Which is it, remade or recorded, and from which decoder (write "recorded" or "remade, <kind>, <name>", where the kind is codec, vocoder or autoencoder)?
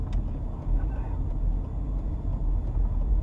recorded